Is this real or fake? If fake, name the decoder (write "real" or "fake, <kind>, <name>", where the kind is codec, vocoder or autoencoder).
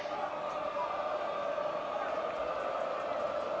real